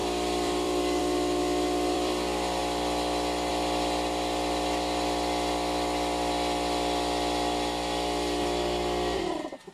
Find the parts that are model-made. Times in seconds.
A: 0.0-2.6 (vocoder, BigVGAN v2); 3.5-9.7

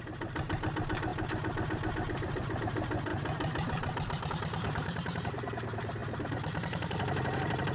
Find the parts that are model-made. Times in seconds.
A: 0.0-1.1 (vocoder, BigVGAN v2); 2.6-7.7

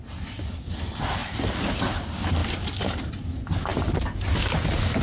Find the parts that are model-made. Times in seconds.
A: 1.2-1.8 (vocoder, BigVGAN v2); 2.4-3.1